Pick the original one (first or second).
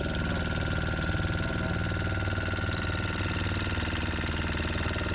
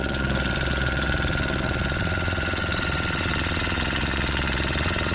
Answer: first